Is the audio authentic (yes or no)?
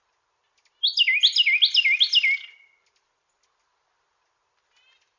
yes